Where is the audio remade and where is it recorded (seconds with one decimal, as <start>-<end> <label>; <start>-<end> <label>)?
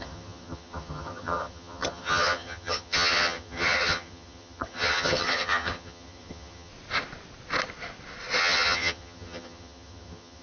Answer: 0.0-6.7 remade; 6.7-8.4 recorded; 8.4-10.4 remade